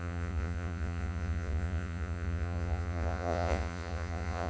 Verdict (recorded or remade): remade